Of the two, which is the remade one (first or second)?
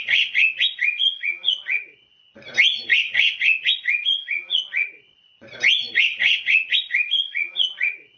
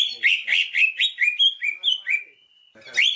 first